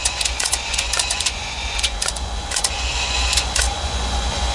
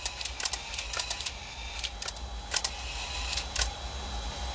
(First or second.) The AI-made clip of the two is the first